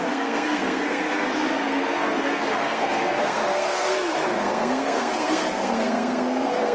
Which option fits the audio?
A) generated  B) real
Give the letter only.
A